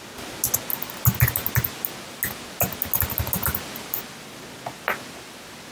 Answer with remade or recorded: recorded